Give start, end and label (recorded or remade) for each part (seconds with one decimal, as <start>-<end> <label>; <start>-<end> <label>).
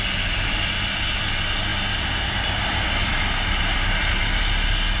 0.0-5.0 recorded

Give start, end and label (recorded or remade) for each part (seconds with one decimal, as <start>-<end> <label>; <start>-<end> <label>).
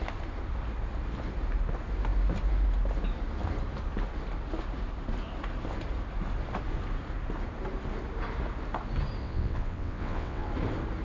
0.0-9.2 recorded; 9.2-10.5 remade; 10.5-11.0 recorded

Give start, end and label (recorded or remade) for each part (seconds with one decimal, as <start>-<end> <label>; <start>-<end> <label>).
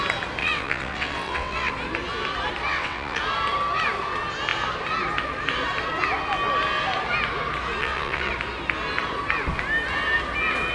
0.0-0.4 recorded; 0.4-1.7 remade; 1.7-2.7 recorded; 2.7-3.2 remade; 3.2-7.8 recorded; 7.8-8.3 remade; 8.3-10.7 recorded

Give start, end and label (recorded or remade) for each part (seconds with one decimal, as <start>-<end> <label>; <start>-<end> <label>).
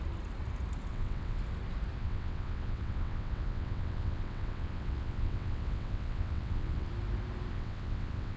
0.0-0.9 recorded; 0.9-1.4 remade; 1.4-2.0 recorded; 2.0-6.9 remade; 6.9-7.5 recorded; 7.5-8.4 remade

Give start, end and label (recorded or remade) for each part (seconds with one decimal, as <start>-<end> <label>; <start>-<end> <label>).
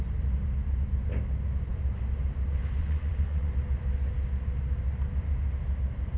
0.0-2.8 recorded; 2.8-3.5 remade; 3.5-6.2 recorded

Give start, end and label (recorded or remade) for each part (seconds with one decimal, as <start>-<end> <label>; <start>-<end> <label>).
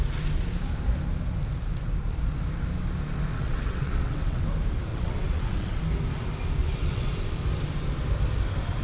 0.0-3.3 recorded; 3.3-4.4 remade; 4.4-4.9 recorded; 4.9-5.8 remade; 5.8-6.6 recorded; 6.6-7.1 remade; 7.1-8.8 recorded